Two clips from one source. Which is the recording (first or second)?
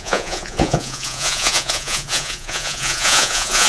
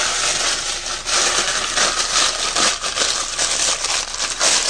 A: second